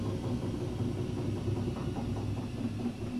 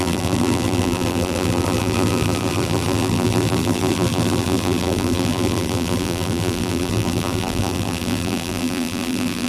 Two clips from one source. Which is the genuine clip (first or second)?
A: first